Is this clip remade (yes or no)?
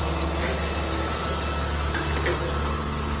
no